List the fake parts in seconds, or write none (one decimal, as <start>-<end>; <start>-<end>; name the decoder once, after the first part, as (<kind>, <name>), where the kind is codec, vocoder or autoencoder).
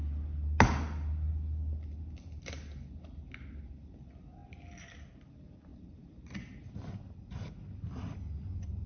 5.7-6.7 (vocoder, BigVGAN v2)